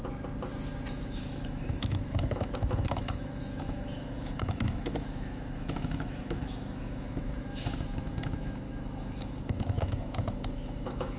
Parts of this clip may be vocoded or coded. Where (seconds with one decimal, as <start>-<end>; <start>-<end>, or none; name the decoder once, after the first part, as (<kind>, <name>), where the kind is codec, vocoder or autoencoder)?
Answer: 0.9-11.2 (autoencoder, DAC-VAE)